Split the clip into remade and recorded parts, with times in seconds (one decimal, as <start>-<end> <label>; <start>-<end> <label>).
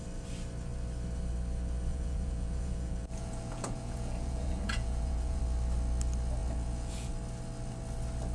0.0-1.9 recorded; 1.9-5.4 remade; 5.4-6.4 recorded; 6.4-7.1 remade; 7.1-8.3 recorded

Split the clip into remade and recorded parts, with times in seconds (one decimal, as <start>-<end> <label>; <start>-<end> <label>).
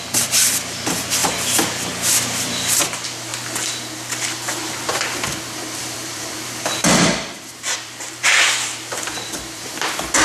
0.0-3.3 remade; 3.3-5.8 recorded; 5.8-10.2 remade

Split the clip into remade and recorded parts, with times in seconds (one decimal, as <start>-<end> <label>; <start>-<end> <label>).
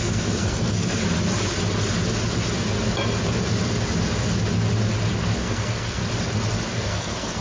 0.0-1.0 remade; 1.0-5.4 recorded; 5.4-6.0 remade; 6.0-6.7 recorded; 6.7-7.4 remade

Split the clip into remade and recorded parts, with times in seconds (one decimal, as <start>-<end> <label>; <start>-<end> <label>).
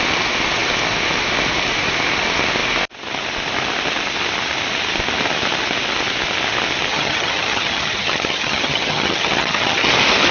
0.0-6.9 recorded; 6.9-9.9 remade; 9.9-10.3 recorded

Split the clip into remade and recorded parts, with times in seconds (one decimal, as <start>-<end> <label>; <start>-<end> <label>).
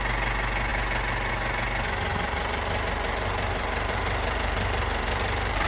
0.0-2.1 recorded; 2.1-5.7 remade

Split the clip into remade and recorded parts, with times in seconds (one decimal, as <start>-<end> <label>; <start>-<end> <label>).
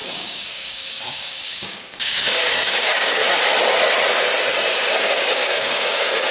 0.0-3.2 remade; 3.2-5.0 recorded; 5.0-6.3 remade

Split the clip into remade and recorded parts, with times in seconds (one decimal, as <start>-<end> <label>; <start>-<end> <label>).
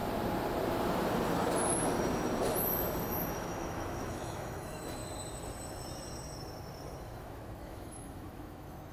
0.0-3.3 recorded; 3.3-5.0 remade; 5.0-7.0 recorded; 7.0-8.9 remade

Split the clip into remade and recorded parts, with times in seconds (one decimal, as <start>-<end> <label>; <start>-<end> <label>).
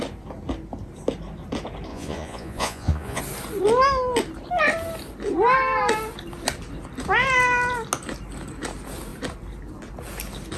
0.0-1.9 recorded; 1.9-3.2 remade; 3.2-10.6 recorded